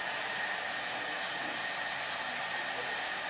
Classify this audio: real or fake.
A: real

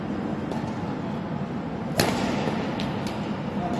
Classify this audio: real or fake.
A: real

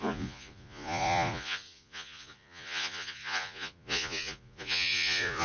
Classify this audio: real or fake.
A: fake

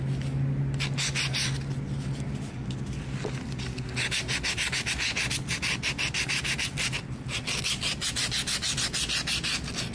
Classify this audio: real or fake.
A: real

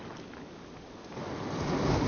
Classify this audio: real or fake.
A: real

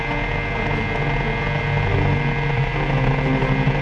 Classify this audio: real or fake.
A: real